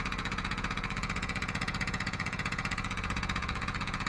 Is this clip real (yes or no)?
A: no